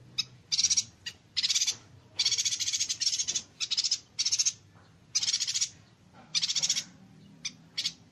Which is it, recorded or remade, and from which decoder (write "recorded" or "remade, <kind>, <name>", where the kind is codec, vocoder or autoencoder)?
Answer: recorded